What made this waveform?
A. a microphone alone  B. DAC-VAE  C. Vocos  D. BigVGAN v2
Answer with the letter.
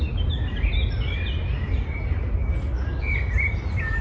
A